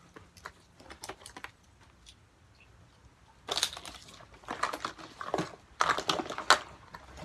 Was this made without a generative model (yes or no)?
yes